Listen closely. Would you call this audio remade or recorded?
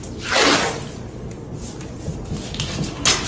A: recorded